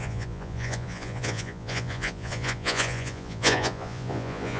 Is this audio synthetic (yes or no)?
yes